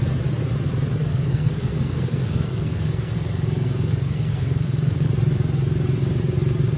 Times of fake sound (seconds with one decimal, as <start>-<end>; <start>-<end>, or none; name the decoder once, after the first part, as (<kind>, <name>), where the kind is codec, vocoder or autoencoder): 1.0-5.1 (codec, SNAC)